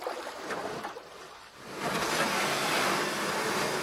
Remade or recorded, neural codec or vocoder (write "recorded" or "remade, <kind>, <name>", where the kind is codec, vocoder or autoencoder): recorded